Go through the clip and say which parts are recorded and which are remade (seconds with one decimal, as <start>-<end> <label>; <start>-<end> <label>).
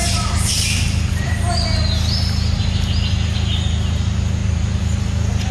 0.0-1.3 remade; 1.3-4.4 recorded; 4.4-5.0 remade; 5.0-5.5 recorded